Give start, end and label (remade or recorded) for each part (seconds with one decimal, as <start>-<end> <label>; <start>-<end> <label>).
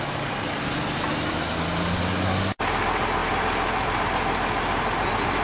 0.0-5.4 recorded